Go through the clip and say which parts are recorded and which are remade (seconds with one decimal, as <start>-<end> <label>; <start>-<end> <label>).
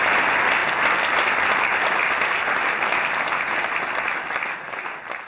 0.0-5.3 recorded